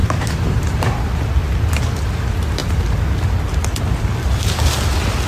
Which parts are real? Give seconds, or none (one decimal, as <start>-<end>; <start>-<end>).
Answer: 0.9-5.3